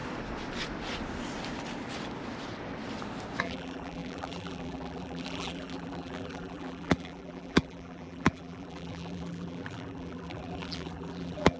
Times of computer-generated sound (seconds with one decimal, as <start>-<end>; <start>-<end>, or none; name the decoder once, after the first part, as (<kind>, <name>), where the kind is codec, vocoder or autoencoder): 3.4-11.6 (vocoder, BigVGAN v2)

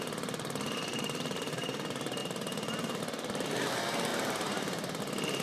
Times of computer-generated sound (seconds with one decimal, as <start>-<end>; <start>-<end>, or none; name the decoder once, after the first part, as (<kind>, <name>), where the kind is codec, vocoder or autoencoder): 2.2-3.0 (vocoder, BigVGAN v2); 4.1-5.0

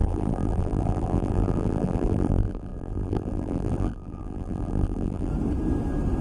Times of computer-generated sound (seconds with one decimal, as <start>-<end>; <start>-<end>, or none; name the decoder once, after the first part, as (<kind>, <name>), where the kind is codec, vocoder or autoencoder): 0.0-5.3 (vocoder, BigVGAN v2)

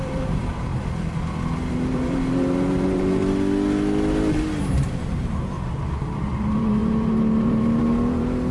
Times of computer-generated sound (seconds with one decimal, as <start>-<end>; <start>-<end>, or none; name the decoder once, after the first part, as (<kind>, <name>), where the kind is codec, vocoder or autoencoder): 0.0-0.7 (vocoder, BigVGAN v2); 1.7-3.2; 4.6-8.5